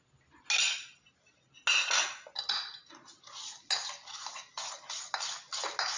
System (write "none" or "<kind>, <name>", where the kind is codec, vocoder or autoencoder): none